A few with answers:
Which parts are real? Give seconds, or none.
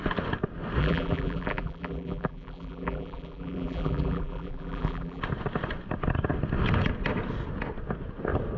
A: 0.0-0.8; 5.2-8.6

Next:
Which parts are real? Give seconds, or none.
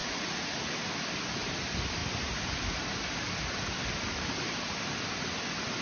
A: 0.7-5.8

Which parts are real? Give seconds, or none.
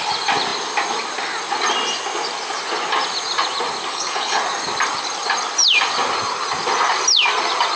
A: 0.0-3.9; 4.4-7.8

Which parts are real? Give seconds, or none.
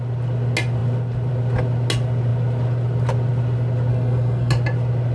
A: 0.0-3.9; 4.5-5.1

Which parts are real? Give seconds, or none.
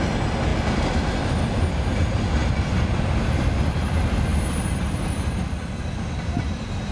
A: 0.0-6.9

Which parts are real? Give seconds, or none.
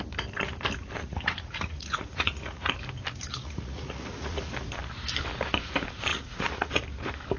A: 0.0-1.0; 2.7-3.3; 4.5-6.1; 6.7-7.4